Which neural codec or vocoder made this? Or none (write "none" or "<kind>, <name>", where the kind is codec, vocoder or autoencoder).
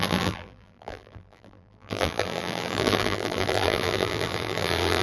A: vocoder, BigVGAN v2